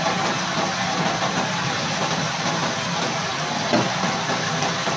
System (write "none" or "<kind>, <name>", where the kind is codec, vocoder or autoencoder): none